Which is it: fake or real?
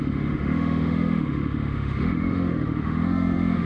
fake